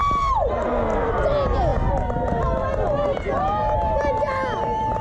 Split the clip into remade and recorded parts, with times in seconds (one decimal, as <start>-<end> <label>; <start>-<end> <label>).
0.0-5.0 recorded